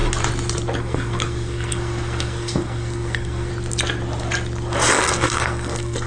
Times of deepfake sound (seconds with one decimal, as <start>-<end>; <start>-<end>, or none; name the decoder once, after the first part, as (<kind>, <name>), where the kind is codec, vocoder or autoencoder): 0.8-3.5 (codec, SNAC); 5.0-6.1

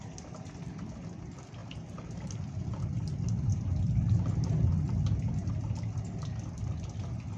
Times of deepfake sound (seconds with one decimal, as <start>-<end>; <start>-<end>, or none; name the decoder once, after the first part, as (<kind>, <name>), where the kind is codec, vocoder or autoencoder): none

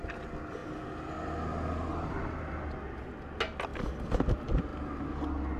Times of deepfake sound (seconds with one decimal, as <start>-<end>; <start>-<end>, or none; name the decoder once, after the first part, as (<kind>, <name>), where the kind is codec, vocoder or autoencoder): none

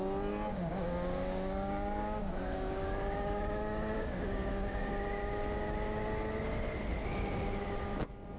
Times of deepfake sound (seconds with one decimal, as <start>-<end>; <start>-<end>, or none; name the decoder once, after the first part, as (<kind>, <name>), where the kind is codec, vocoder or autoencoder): 0.5-4.9 (codec, DAC)

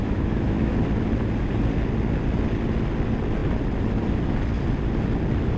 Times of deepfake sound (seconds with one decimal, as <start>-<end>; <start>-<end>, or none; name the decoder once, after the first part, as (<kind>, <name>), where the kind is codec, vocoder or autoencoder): 0.0-0.7 (autoencoder, DAC-VAE)